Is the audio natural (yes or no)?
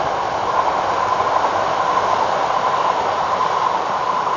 yes